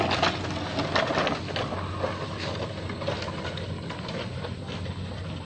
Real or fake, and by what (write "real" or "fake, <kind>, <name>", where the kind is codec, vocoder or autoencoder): real